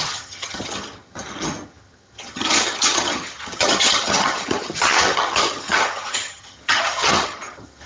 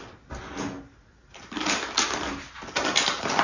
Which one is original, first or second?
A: second